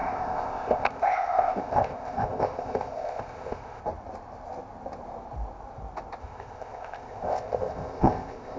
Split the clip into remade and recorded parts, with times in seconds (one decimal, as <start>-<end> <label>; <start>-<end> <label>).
0.0-3.8 remade; 3.8-6.2 recorded; 6.2-8.6 remade